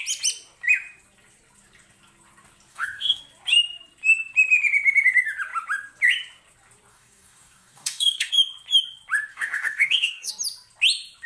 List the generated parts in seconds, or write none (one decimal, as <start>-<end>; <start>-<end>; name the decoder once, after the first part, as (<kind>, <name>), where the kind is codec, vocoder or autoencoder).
2.7-3.2 (codec, DAC); 6.9-8.3; 9.3-10.3